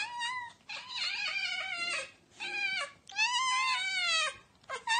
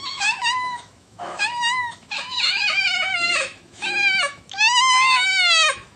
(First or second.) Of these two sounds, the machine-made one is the second